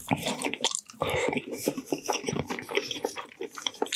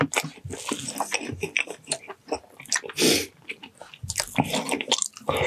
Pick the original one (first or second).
second